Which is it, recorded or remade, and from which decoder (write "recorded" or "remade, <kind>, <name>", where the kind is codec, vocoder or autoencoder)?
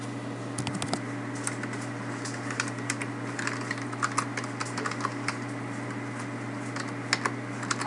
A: recorded